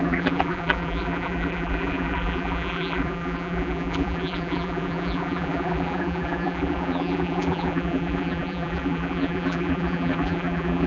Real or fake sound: fake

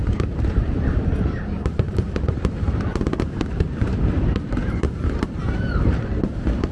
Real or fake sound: fake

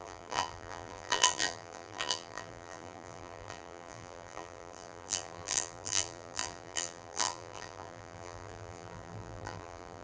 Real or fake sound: fake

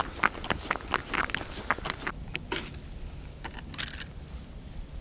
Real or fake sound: real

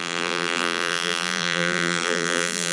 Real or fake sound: fake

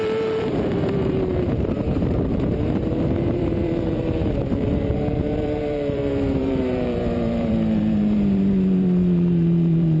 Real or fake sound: fake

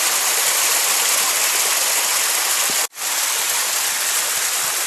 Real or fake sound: real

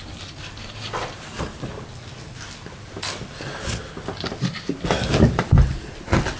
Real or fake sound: real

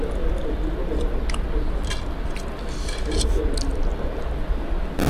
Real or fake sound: real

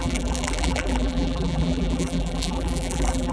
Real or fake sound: fake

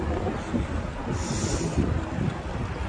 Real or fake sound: real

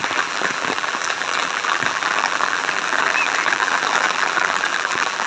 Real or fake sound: fake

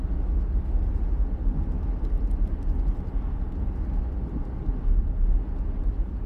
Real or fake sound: real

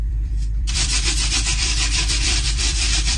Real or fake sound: fake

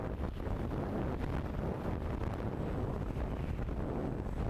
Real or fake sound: real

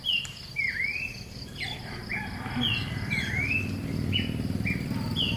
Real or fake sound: fake